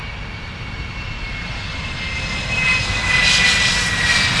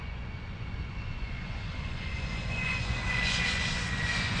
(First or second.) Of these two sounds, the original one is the first